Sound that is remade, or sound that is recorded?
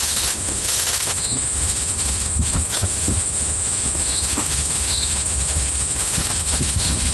remade